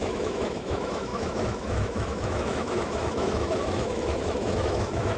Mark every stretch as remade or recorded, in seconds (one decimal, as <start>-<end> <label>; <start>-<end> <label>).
0.0-5.2 remade